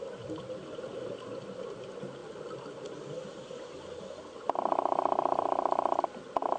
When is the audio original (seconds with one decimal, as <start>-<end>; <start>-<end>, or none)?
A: 0.0-6.6